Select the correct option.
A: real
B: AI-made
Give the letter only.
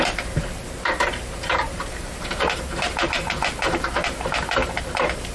B